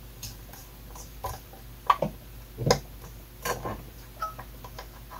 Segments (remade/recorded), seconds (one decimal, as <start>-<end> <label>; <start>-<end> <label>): 0.0-5.2 recorded